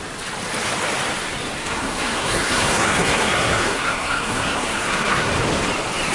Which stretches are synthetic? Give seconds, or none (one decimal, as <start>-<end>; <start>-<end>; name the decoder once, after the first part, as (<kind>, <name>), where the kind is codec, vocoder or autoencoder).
1.6-5.3 (codec, SNAC)

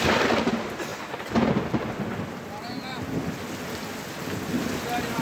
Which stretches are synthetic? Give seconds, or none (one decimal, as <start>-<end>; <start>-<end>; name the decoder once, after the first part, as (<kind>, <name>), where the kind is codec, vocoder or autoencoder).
none

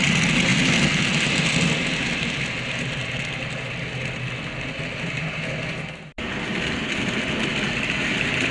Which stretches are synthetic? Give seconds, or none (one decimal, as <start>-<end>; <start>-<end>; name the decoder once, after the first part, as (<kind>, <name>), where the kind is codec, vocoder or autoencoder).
none